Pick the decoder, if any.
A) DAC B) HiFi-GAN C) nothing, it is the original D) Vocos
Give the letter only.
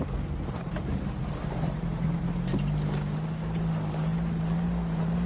C